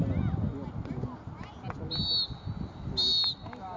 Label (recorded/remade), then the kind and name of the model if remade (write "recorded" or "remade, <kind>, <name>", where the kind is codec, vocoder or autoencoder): recorded